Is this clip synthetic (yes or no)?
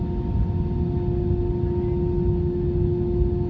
no